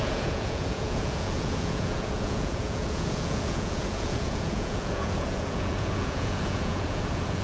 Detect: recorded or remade remade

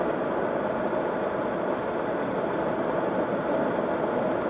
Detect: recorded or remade recorded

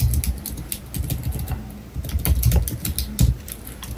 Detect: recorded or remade recorded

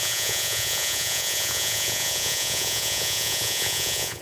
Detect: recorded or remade remade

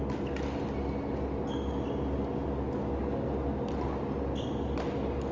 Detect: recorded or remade recorded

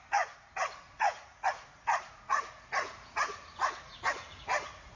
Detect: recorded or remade remade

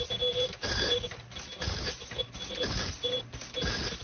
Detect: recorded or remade recorded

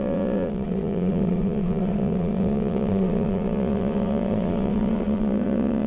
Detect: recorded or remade remade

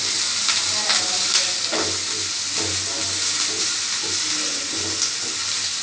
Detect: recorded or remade recorded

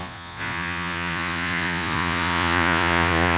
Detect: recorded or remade remade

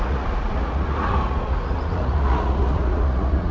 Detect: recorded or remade remade